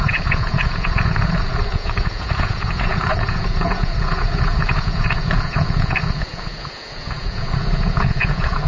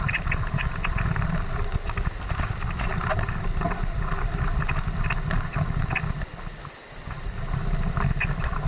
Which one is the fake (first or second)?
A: first